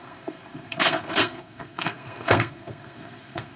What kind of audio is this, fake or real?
fake